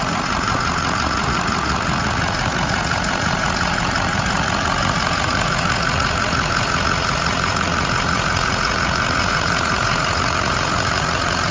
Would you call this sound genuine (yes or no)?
no